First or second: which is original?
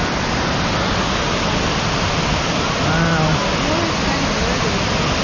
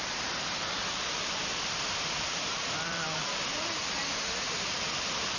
first